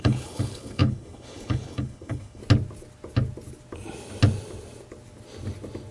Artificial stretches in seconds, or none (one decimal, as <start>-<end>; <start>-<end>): 0.0-2.4